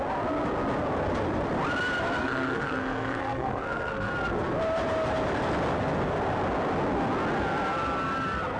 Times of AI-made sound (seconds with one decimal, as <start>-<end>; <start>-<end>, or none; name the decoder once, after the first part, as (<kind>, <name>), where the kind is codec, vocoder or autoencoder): 2.2-4.1 (codec, SNAC)